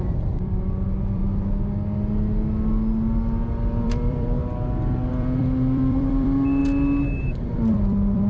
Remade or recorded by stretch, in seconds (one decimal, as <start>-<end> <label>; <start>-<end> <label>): 0.0-1.2 remade; 1.2-3.8 recorded; 3.8-4.4 remade; 4.4-5.1 recorded; 5.1-6.6 remade; 6.6-7.2 recorded; 7.2-8.3 remade